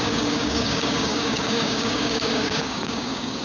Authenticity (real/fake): fake